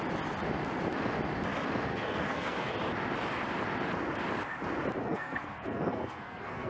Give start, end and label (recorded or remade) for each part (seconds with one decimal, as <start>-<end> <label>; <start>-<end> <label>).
0.0-1.9 recorded; 1.9-2.7 remade; 2.7-5.0 recorded; 5.0-6.7 remade